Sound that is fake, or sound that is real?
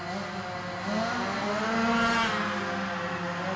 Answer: real